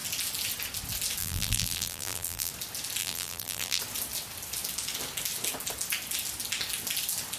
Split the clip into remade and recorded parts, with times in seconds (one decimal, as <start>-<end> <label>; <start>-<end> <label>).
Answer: 0.0-1.2 recorded; 1.2-2.5 remade; 2.5-3.0 recorded; 3.0-3.8 remade; 3.8-7.4 recorded